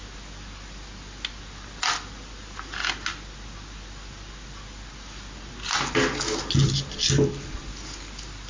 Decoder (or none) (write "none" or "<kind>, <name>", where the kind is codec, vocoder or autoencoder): none